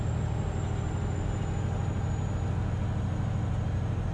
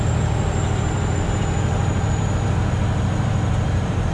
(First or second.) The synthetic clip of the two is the second